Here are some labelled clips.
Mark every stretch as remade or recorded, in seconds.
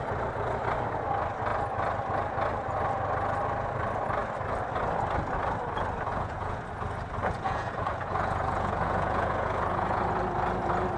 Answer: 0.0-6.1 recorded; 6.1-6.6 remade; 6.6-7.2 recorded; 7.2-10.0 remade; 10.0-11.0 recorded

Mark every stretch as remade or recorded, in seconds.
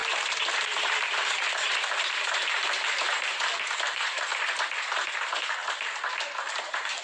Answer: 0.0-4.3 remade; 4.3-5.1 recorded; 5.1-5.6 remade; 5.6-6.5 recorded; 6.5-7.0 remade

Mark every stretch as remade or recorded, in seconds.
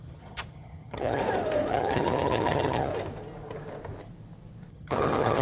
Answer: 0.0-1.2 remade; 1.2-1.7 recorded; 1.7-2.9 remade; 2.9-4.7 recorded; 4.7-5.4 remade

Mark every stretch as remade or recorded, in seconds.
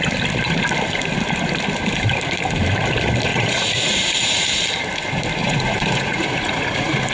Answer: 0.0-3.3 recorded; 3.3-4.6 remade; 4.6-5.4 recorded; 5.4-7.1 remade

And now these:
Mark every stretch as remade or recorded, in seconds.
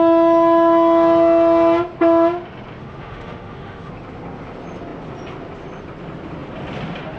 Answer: 0.0-2.8 recorded; 2.8-3.9 remade; 3.9-7.2 recorded